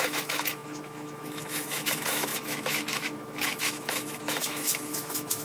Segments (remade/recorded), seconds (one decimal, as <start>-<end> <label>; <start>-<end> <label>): 0.0-5.4 remade